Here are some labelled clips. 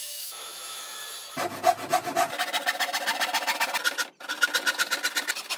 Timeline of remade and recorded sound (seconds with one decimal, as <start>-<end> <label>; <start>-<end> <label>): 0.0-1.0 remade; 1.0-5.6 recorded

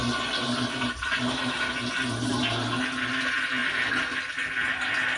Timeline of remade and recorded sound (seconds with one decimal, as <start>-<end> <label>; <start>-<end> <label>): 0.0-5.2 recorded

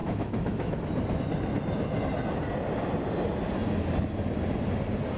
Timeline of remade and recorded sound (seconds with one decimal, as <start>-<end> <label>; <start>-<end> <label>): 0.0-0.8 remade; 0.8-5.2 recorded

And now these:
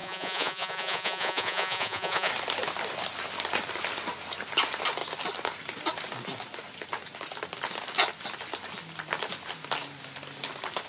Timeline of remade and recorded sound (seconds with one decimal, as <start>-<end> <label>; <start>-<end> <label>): 0.0-2.3 remade; 2.3-10.9 recorded